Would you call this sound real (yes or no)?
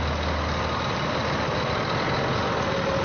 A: yes